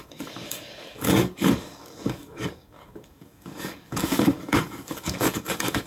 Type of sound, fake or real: fake